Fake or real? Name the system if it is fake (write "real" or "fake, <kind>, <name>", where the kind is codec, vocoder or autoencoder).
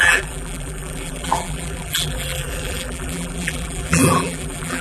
fake, vocoder, BigVGAN v2